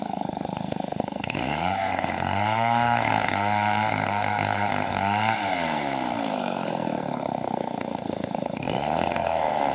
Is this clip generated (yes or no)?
yes